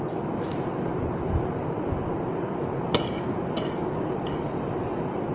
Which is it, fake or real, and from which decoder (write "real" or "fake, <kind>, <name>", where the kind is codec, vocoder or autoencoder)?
real